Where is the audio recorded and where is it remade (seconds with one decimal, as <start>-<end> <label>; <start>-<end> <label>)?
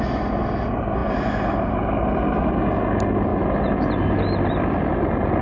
0.0-5.4 recorded